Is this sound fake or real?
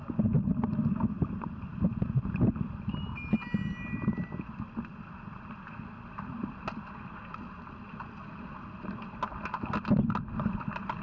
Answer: real